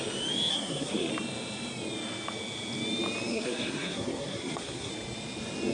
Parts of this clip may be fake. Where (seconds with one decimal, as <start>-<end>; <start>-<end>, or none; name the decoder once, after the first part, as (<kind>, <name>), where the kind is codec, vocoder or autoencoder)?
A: 0.5-1.1 (codec, SNAC); 3.3-4.9